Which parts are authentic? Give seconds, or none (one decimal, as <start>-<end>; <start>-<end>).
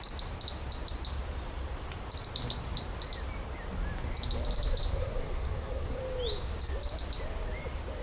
0.0-5.0; 6.0-8.0